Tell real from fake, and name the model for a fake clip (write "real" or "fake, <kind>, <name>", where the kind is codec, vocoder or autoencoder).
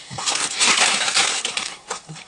fake, codec, SNAC